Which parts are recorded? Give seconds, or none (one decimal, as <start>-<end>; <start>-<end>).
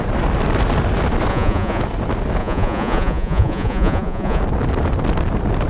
0.0-1.3; 1.8-2.4; 4.4-5.7